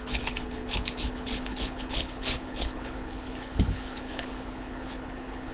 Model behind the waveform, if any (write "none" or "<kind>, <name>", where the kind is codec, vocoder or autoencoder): codec, HILCodec